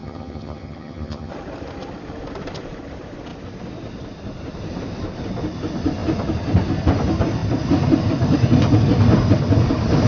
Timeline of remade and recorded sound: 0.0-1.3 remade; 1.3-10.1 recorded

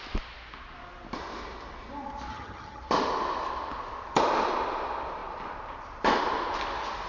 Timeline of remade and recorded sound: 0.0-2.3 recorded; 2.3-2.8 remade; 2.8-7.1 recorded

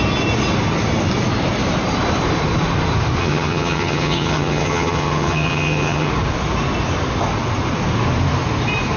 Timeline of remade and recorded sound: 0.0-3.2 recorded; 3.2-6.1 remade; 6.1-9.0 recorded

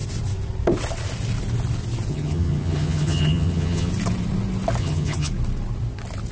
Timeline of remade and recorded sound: 0.0-2.1 recorded; 2.1-3.9 remade; 3.9-4.8 recorded; 4.8-5.3 remade; 5.3-6.3 recorded

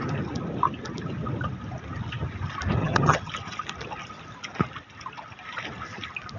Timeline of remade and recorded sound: 0.0-2.8 recorded; 2.8-3.3 remade; 3.3-6.4 recorded